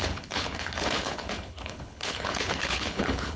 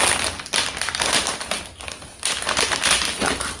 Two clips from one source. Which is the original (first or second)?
second